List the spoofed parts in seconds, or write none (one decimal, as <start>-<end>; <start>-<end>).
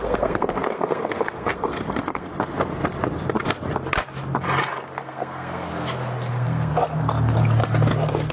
0.0-2.3; 5.0-5.7; 6.3-6.7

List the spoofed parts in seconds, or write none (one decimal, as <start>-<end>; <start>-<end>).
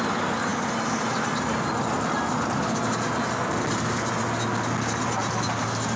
none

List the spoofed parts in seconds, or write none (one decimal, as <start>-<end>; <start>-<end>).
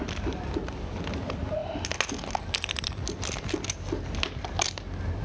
none